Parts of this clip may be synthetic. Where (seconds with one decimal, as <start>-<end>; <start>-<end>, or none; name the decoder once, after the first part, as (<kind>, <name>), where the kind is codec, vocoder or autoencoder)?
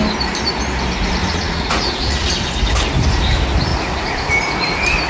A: 1.2-2.3 (vocoder, Vocos); 3.7-4.3